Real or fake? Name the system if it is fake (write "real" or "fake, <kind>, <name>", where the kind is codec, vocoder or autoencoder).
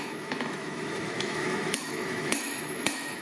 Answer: fake, autoencoder, DAC-VAE